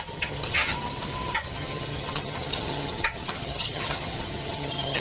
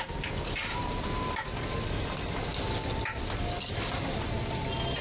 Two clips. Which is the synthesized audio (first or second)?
first